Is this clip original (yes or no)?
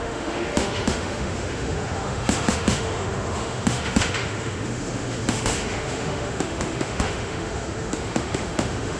no